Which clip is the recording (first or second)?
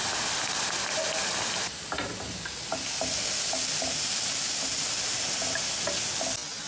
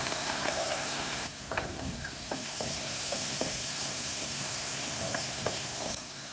first